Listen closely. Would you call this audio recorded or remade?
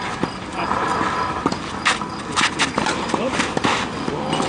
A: recorded